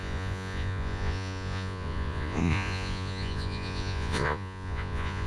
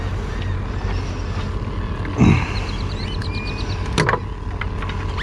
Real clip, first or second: second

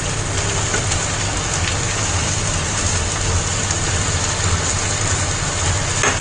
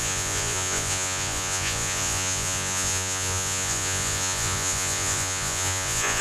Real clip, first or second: first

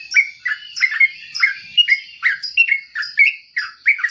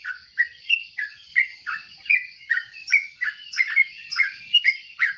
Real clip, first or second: first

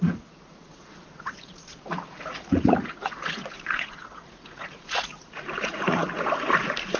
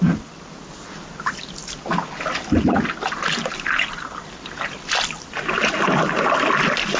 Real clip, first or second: second